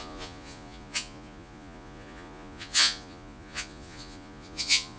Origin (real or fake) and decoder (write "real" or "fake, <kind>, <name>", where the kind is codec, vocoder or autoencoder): fake, vocoder, Vocos